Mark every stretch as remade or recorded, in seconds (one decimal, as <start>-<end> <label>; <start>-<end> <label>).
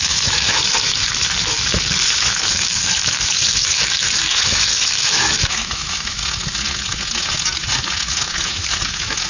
0.0-6.2 remade; 6.2-8.4 recorded; 8.4-9.3 remade